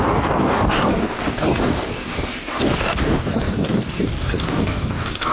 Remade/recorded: remade